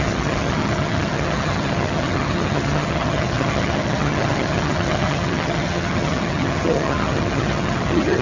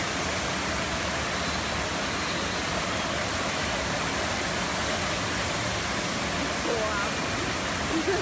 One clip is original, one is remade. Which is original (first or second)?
second